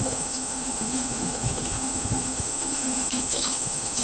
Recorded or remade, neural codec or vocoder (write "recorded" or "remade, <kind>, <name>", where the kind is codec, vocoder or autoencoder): remade, autoencoder, DAC-VAE